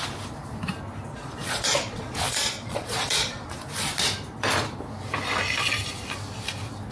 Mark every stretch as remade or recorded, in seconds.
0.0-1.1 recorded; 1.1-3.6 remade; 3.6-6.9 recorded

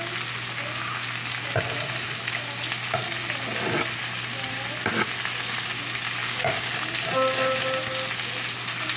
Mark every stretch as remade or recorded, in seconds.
0.0-6.2 recorded; 6.2-6.7 remade; 6.7-9.0 recorded

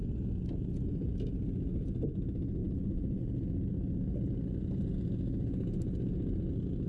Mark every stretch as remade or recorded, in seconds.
0.0-2.6 recorded; 2.6-3.2 remade; 3.2-6.9 recorded

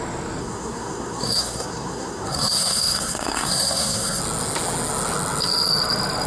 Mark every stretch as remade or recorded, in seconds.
0.0-0.4 recorded; 0.4-4.2 remade; 4.2-6.3 recorded